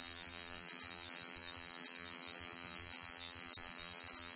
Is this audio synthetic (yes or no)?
yes